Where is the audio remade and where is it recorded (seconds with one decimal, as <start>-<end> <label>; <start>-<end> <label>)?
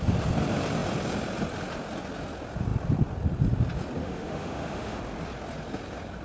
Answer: 0.0-4.0 recorded; 4.0-5.0 remade; 5.0-6.2 recorded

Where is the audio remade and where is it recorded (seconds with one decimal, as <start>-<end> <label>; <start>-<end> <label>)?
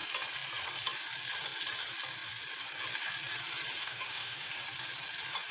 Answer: 0.0-3.8 recorded; 3.8-4.5 remade; 4.5-5.5 recorded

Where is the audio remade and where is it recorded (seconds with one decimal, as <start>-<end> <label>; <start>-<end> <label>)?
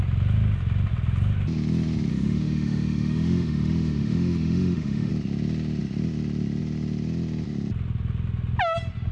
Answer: 0.0-2.1 recorded; 2.1-5.1 remade; 5.1-9.1 recorded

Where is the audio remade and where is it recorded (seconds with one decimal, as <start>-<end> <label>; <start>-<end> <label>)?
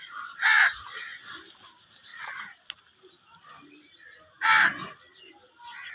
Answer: 0.0-5.9 recorded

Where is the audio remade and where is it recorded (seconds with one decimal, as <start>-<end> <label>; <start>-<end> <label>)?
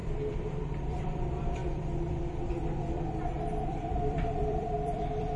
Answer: 0.0-0.6 recorded; 0.6-1.6 remade; 1.6-3.6 recorded; 3.6-5.4 remade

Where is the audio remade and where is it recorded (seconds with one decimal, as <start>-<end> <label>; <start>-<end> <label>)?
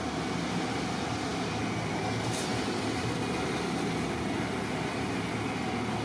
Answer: 0.0-6.0 recorded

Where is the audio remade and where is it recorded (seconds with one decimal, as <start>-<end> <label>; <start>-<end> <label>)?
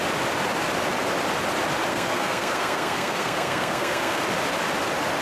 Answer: 0.0-1.9 recorded; 1.9-4.2 remade; 4.2-5.2 recorded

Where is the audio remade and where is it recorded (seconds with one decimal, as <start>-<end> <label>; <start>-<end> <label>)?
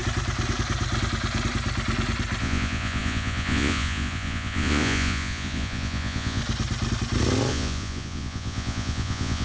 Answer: 0.0-2.4 recorded; 2.4-6.4 remade; 6.4-7.5 recorded; 7.5-9.4 remade